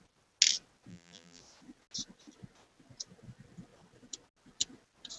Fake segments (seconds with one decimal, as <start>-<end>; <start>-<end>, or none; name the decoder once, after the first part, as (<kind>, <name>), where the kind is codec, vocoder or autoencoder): 0.9-1.4 (vocoder, BigVGAN v2)